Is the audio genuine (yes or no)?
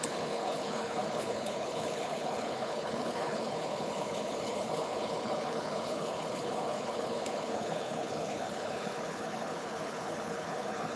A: no